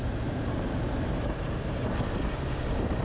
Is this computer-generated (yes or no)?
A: yes